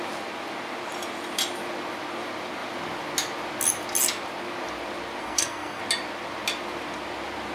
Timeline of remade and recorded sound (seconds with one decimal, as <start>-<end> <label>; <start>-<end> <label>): 0.0-5.2 recorded; 5.2-5.8 remade; 5.8-7.5 recorded